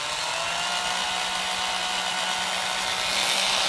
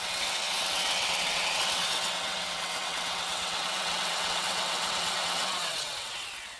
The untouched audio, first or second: first